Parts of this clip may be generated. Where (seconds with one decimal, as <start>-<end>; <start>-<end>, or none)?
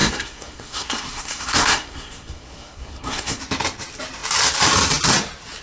0.0-3.4